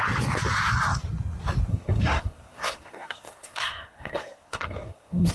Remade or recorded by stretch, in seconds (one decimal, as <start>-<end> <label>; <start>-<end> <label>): 0.0-1.7 recorded; 1.7-5.3 remade